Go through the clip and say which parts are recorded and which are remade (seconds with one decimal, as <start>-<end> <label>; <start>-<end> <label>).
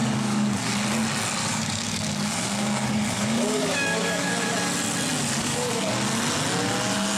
0.0-0.7 remade; 0.7-1.4 recorded; 1.4-4.5 remade; 4.5-5.4 recorded; 5.4-5.9 remade; 5.9-7.2 recorded